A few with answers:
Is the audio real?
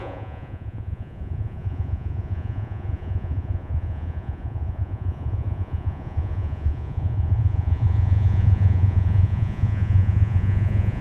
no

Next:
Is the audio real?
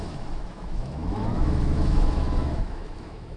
no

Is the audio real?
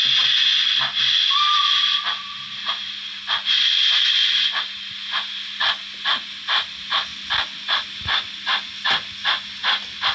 yes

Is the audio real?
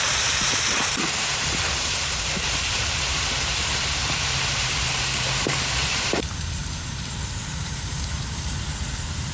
no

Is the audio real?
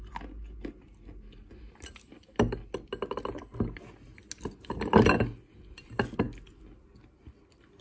yes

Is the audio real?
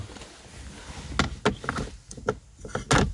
yes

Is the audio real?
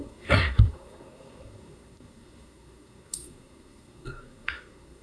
no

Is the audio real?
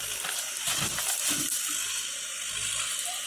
no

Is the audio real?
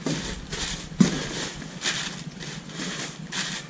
no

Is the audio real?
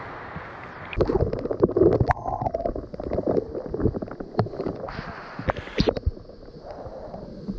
yes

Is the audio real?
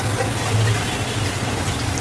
yes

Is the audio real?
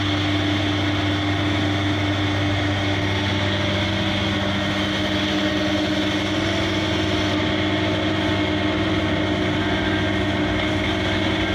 yes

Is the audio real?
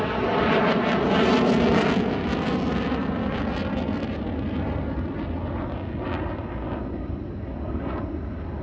yes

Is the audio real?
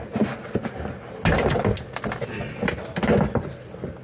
yes